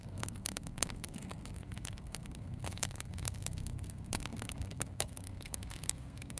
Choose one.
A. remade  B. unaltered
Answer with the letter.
A